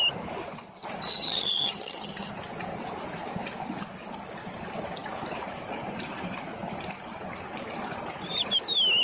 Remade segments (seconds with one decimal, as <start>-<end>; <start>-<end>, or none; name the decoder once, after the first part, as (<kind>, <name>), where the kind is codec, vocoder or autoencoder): 1.1-2.3 (vocoder, HiFi-GAN)